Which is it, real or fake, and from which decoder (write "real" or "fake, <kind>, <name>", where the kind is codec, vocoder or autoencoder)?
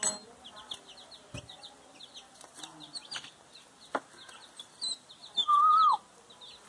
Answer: real